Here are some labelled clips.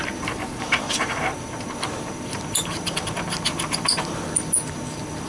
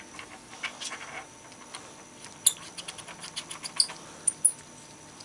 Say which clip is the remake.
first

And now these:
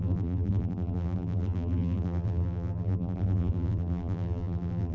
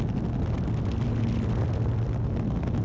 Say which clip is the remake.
first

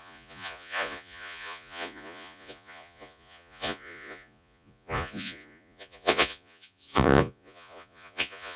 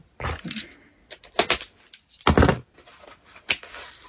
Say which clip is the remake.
first